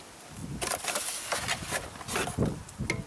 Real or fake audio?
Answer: real